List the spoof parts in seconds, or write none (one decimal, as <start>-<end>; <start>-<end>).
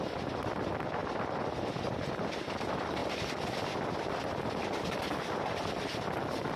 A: none